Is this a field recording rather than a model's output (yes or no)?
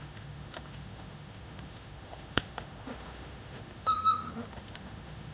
no